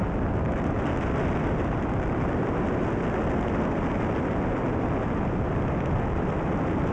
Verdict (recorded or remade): recorded